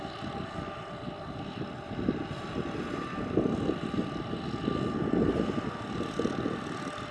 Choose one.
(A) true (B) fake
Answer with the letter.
A